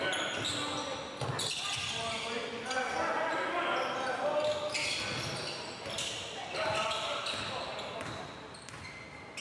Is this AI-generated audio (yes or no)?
no